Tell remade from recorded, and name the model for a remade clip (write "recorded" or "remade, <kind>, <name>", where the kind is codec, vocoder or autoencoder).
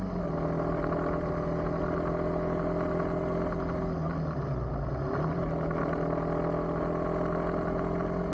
recorded